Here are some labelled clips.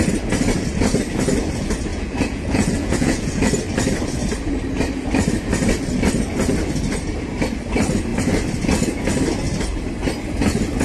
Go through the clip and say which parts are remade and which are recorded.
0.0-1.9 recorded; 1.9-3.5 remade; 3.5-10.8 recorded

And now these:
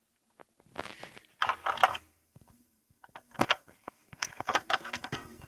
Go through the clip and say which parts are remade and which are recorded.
0.0-1.9 recorded; 1.9-5.5 remade

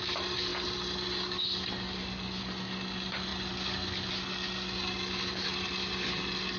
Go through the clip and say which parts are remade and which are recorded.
0.0-6.6 recorded

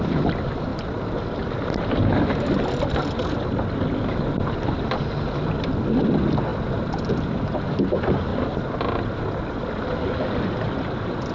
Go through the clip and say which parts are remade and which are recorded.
0.0-0.7 remade; 0.7-6.0 recorded; 6.0-8.3 remade; 8.3-10.5 recorded; 10.5-11.3 remade